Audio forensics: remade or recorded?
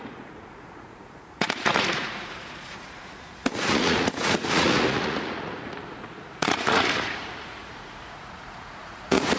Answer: remade